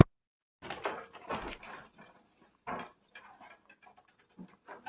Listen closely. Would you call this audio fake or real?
real